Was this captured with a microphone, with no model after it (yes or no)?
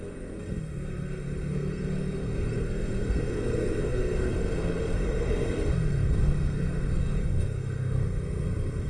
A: no